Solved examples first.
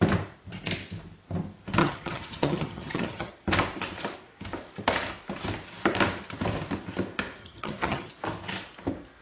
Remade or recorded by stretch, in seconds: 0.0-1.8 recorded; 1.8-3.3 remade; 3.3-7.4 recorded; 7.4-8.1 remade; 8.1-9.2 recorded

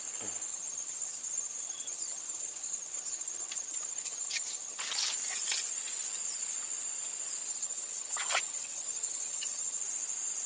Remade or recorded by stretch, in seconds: 0.0-0.5 recorded; 0.5-4.8 remade; 4.8-7.5 recorded; 7.5-9.8 remade; 9.8-10.5 recorded